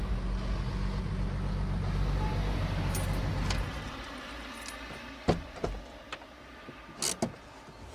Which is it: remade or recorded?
recorded